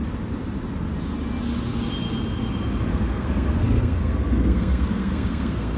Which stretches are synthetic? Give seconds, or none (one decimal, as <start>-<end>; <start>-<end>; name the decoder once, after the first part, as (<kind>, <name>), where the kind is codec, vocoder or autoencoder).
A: 2.9-5.8 (codec, SNAC)